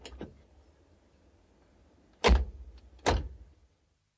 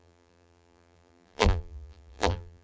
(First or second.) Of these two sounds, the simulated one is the second